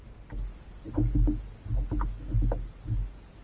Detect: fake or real real